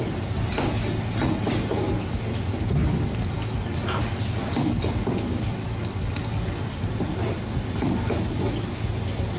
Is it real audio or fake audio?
real